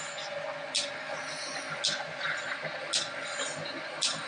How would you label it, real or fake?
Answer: real